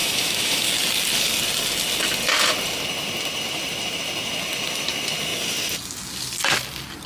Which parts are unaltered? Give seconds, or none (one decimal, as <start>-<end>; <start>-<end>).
0.7-7.1